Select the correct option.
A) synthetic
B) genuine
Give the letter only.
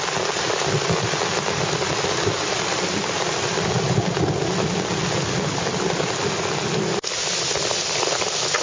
B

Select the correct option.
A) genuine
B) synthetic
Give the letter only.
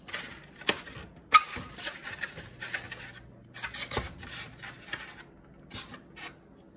A